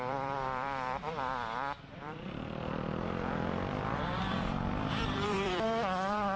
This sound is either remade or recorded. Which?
remade